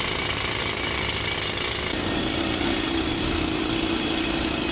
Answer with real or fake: real